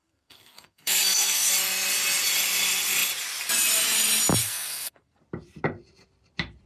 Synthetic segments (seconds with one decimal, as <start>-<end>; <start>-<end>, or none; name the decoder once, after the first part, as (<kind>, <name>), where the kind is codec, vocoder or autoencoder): 0.0-1.5 (codec, SNAC); 4.4-5.2